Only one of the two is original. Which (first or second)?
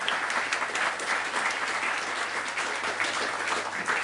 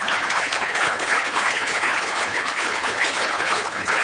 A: first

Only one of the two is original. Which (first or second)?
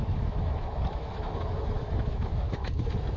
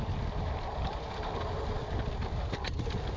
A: second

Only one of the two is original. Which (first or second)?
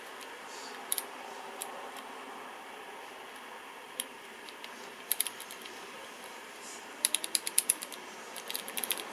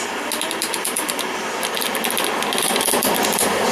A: second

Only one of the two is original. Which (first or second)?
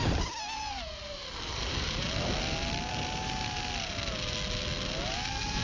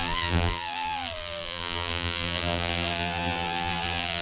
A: first